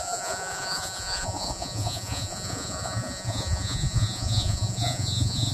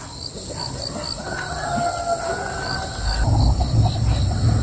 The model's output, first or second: first